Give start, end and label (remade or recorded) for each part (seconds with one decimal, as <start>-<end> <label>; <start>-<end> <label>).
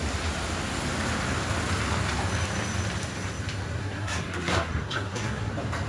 0.0-3.8 recorded; 3.8-5.5 remade; 5.5-5.9 recorded